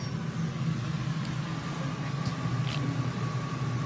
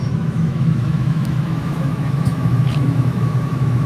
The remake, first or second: second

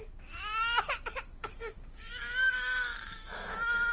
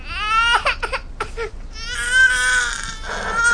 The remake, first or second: first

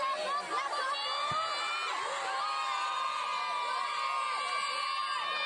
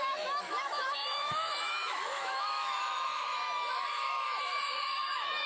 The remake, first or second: second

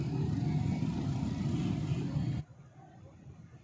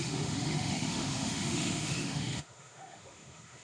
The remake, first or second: second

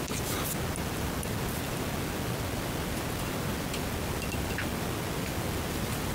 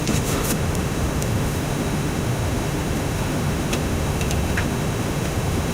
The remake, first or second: second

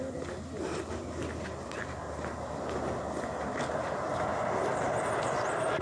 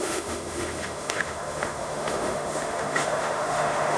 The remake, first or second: second